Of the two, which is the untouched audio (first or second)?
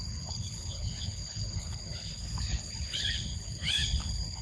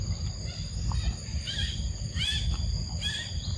second